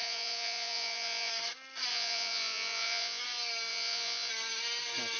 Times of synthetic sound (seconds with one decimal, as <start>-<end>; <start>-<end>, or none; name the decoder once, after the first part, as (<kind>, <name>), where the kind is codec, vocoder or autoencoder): 0.0-1.3 (vocoder, Vocos); 1.9-3.2; 3.7-4.3